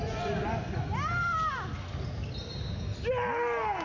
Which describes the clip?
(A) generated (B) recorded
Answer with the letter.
B